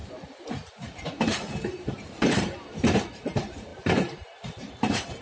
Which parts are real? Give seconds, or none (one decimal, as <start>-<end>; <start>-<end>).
none

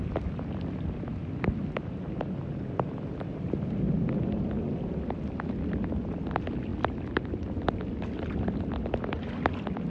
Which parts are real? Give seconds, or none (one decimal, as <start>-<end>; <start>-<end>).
0.0-9.9

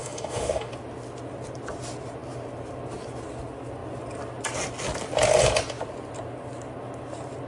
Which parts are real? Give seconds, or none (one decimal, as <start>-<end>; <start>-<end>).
0.7-7.5

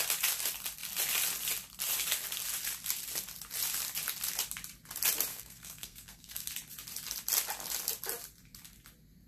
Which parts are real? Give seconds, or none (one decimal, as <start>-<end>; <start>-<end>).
0.0-5.3; 6.5-9.3

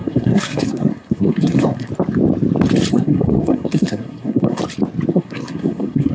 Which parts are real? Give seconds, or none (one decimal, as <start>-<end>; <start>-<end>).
1.9-2.9; 4.6-5.1

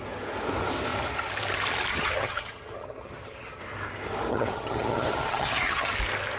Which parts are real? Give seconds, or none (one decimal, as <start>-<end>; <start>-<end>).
0.0-1.9; 3.6-4.3; 5.9-6.4

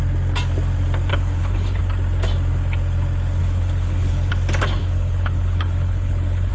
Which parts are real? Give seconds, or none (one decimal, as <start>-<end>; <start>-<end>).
0.0-1.1; 1.8-3.4; 4.3-4.8